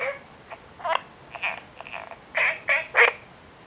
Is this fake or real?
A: real